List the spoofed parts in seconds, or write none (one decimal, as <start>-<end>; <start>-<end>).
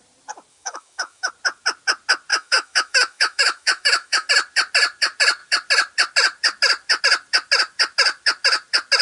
0.5-1.3; 2.3-4.3